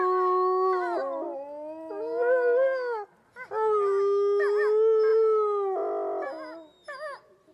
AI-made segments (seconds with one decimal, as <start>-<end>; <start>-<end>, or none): none